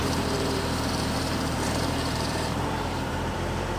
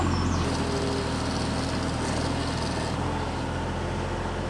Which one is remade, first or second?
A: first